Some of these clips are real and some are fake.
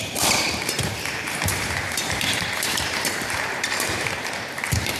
fake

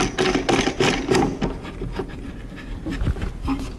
real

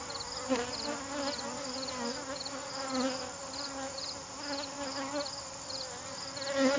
real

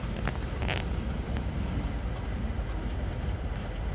real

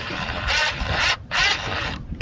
fake